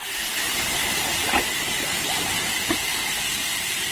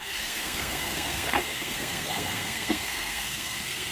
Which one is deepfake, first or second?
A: second